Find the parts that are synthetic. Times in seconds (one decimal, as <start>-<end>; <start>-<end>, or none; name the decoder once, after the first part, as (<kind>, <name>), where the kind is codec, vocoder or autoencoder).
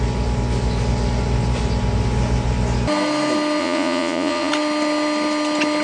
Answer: 3.6-4.5 (vocoder, Vocos)